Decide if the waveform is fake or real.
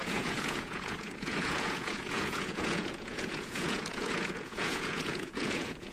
fake